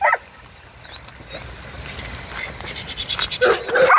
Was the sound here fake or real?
real